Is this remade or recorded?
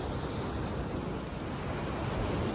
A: recorded